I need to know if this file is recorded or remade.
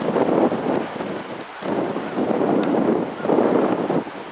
recorded